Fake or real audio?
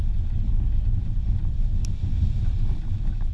real